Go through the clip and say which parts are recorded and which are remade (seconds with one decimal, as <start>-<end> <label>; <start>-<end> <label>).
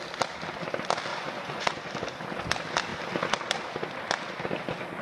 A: 0.0-1.1 recorded; 1.1-1.9 remade; 1.9-5.0 recorded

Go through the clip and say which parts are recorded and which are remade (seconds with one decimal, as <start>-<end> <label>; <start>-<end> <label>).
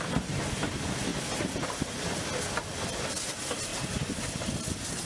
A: 0.0-5.1 recorded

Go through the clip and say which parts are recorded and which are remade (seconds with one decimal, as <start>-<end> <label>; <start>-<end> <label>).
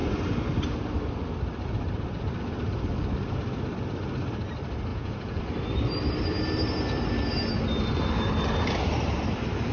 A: 0.0-4.9 recorded; 4.9-5.4 remade; 5.4-9.7 recorded